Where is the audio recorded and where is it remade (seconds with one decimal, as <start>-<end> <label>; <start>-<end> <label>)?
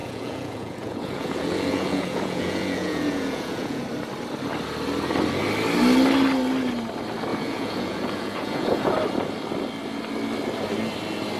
0.0-3.8 remade; 3.8-7.3 recorded; 7.3-8.9 remade; 8.9-11.4 recorded